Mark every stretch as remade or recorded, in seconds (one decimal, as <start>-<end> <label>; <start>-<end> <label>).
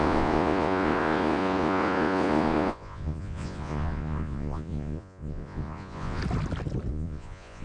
0.0-6.2 remade; 6.2-6.9 recorded; 6.9-7.6 remade